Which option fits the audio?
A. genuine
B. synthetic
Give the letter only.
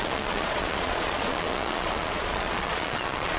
B